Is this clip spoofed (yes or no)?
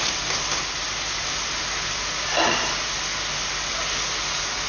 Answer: no